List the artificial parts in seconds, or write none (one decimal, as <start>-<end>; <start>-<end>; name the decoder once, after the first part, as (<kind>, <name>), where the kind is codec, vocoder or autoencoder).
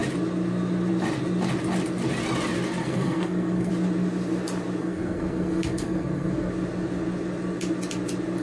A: 2.8-3.7 (codec, SNAC); 4.8-6.5